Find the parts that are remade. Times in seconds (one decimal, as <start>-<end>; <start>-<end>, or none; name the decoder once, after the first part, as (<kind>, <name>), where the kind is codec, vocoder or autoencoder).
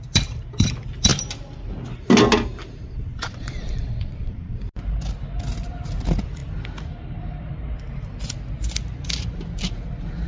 2.8-4.6 (vocoder, Vocos)